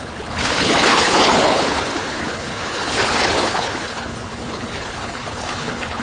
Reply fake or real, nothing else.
fake